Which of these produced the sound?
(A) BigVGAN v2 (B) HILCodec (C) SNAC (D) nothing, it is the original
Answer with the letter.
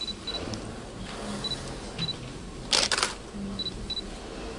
D